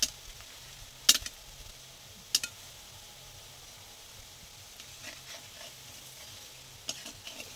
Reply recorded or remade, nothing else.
recorded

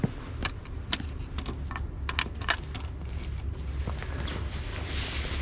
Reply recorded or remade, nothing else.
recorded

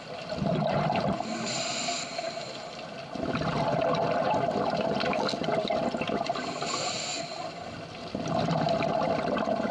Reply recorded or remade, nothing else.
recorded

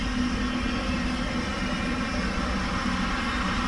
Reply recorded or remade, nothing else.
recorded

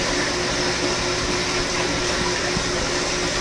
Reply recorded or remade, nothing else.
recorded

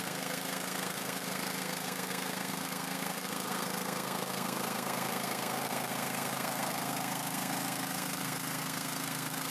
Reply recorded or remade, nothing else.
remade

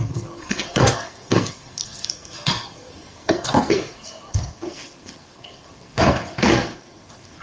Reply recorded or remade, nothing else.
remade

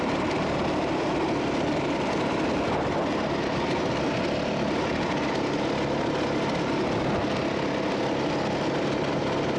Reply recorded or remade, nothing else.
recorded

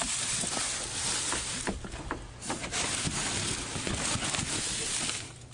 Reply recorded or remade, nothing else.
recorded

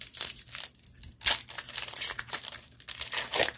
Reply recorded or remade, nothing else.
recorded